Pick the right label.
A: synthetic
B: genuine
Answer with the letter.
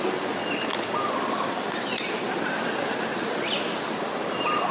B